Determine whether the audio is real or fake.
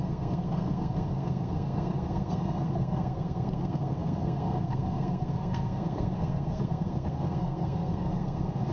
fake